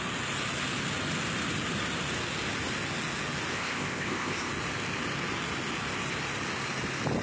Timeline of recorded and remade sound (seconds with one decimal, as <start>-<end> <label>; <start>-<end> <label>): 0.0-3.5 recorded; 3.5-4.5 remade; 4.5-7.2 recorded